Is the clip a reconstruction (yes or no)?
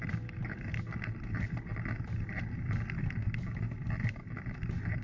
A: no